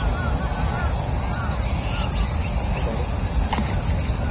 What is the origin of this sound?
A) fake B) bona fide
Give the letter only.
B